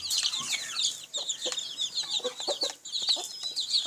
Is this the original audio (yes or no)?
yes